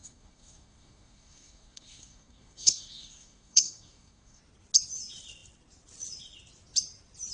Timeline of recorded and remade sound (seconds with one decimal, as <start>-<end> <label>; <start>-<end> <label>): 0.0-4.4 remade; 4.4-7.3 recorded